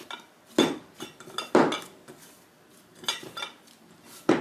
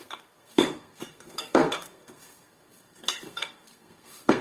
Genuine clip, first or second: first